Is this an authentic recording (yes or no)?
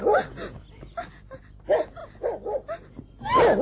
yes